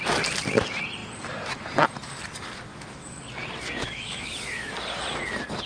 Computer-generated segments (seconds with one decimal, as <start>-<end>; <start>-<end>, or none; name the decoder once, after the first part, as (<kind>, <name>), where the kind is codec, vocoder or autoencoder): 2.7-3.2 (autoencoder, DAC-VAE); 3.8-4.7